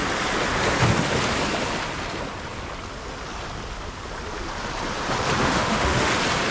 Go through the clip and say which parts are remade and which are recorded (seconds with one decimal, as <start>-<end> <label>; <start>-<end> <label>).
0.0-5.4 recorded; 5.4-6.1 remade; 6.1-6.5 recorded